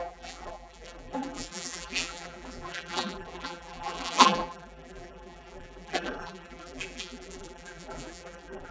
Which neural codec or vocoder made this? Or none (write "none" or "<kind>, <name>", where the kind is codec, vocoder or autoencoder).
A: vocoder, BigVGAN v2